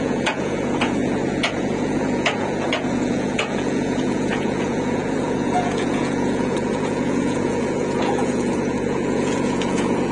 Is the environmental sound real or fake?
fake